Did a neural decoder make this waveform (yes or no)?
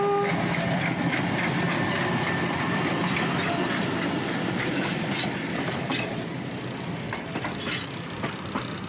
no